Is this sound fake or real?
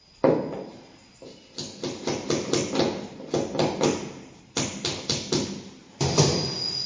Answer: real